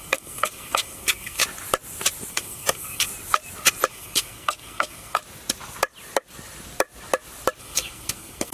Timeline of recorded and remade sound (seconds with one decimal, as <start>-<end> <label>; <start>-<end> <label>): 0.0-1.4 remade; 1.4-2.3 recorded; 2.3-3.1 remade; 3.1-3.9 recorded; 3.9-5.2 remade; 5.2-7.6 recorded; 7.6-8.5 remade